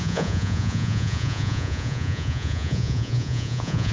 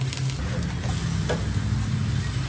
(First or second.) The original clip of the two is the second